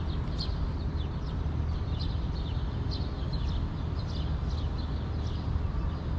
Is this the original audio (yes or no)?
yes